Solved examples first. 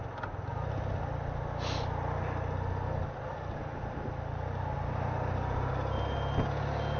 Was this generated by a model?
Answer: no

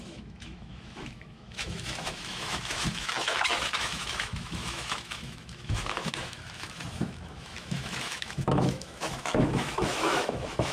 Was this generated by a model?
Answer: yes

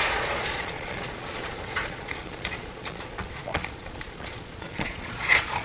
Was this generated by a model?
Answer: yes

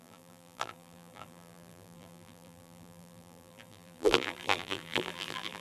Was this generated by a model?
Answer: yes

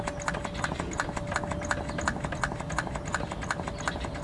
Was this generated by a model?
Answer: no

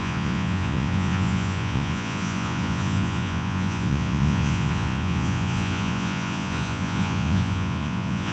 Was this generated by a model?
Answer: yes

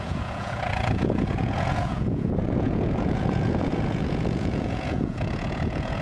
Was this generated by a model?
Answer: yes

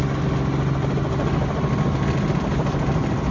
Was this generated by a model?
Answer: no